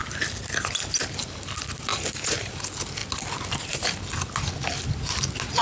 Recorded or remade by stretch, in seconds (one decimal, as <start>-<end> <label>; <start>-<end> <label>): 0.0-1.9 recorded; 1.9-2.6 remade; 2.6-5.6 recorded